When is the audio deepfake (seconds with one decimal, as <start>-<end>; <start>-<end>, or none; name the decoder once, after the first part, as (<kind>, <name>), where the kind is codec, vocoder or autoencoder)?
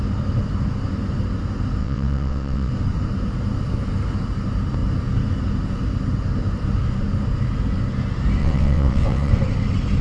1.8-2.7 (vocoder, WaveNeXt); 8.4-9.3